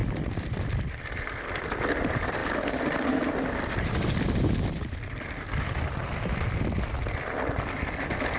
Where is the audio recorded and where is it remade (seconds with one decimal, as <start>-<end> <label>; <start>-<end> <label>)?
0.0-2.4 remade; 2.4-6.6 recorded; 6.6-8.4 remade